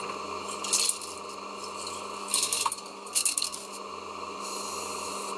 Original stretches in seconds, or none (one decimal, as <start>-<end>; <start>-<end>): 0.0-2.2; 3.7-5.4